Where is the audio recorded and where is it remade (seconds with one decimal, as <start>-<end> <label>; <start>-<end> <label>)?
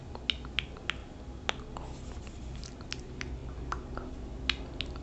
0.0-5.0 recorded